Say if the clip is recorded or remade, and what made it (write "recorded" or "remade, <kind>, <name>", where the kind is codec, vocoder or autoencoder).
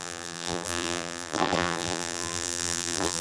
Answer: remade, vocoder, BigVGAN v2